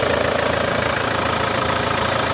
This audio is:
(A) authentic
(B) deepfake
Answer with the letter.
B